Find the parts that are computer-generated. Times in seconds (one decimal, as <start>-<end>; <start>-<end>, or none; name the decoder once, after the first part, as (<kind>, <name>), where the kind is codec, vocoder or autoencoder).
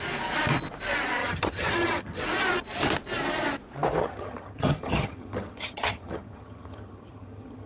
1.2-2.2 (vocoder, HiFi-GAN); 4.0-7.7